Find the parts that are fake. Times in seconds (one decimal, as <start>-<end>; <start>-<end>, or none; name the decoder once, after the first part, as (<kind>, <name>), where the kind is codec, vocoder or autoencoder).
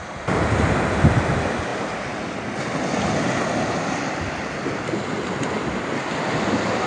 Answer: none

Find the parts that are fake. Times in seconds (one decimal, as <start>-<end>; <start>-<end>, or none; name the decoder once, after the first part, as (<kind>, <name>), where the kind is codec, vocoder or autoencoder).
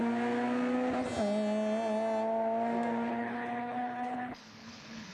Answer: 3.1-5.1 (codec, HILCodec)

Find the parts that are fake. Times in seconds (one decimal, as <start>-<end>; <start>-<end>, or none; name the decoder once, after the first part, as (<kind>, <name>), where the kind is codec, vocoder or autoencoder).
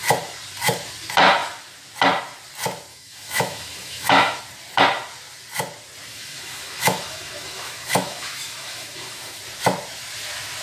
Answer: 2.9-4.4 (autoencoder, DAC-VAE); 6.1-9.4